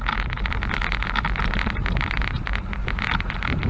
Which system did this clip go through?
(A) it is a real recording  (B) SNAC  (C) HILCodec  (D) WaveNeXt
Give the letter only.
A